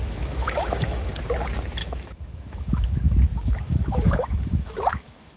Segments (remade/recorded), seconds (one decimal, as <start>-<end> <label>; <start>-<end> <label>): 0.0-1.1 remade; 1.1-1.8 recorded; 1.8-2.9 remade; 2.9-3.3 recorded; 3.3-5.4 remade